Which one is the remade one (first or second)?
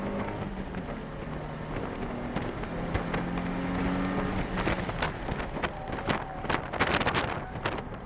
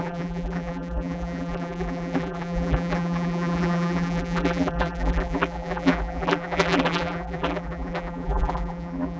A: second